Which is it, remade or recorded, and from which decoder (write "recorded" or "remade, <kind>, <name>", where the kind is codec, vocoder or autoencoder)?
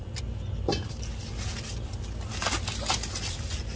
recorded